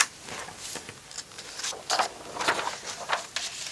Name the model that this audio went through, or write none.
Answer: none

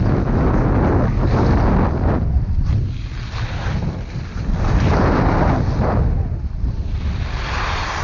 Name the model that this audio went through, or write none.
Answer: none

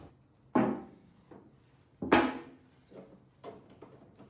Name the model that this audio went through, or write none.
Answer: none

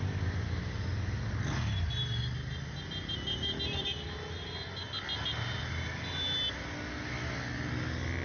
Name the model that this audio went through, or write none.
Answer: none